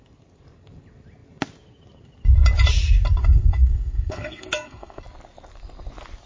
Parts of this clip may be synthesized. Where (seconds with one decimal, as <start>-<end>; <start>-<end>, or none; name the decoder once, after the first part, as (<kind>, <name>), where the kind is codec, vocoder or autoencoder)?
3.2-5.0 (codec, SNAC)